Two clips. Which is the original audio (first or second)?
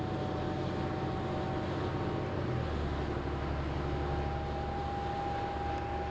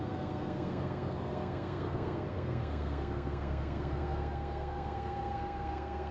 first